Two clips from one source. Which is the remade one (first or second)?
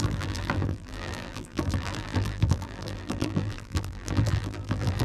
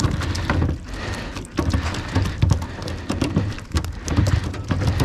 first